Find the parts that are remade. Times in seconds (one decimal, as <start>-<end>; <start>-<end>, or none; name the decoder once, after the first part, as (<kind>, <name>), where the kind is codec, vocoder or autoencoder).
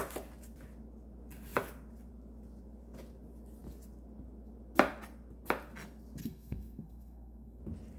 6.2-7.6 (codec, SNAC)